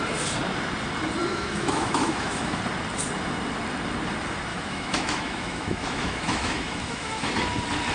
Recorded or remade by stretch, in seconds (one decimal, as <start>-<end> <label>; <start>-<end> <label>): 0.0-1.3 recorded; 1.3-2.6 remade; 2.6-4.5 recorded; 4.5-7.3 remade; 7.3-7.9 recorded